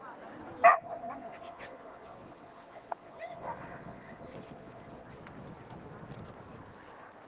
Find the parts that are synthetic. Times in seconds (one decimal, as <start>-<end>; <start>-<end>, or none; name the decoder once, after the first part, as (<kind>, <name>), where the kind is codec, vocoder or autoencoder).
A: 0.7-5.1 (vocoder, Vocos)